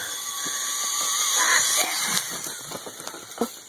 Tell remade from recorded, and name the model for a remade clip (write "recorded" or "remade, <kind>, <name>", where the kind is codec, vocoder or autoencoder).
recorded